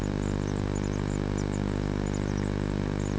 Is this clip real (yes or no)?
yes